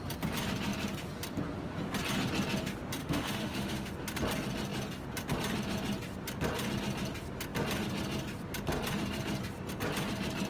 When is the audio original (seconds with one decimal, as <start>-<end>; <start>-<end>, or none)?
0.0-3.0; 3.9-10.5